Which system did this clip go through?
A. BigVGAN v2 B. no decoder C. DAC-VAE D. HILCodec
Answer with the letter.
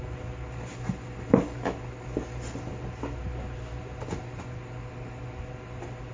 B